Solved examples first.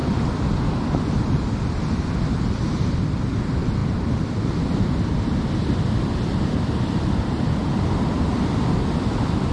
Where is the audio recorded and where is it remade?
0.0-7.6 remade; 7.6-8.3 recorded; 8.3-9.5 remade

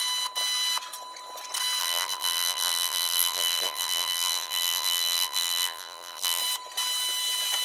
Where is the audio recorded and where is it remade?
0.0-1.8 recorded; 1.8-6.4 remade; 6.4-7.6 recorded

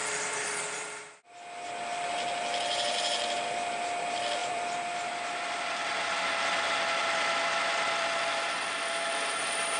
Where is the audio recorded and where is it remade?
0.0-1.0 remade; 1.0-4.4 recorded; 4.4-9.8 remade

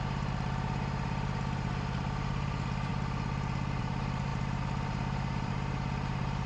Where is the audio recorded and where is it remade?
0.0-2.9 remade; 2.9-3.8 recorded; 3.8-6.5 remade

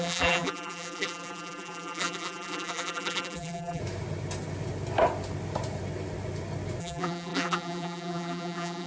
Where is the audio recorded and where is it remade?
0.0-3.8 remade; 3.8-6.8 recorded; 6.8-8.9 remade

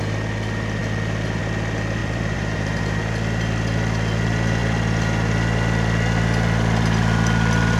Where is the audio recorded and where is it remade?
0.0-2.0 recorded; 2.0-3.0 remade; 3.0-7.8 recorded

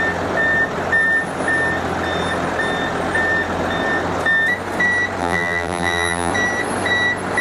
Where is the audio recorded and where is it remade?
0.0-5.2 recorded; 5.2-6.3 remade; 6.3-7.4 recorded